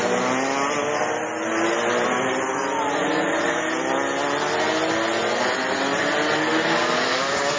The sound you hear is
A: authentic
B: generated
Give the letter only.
A